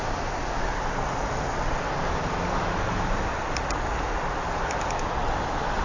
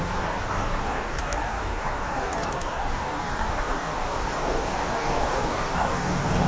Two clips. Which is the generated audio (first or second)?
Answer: second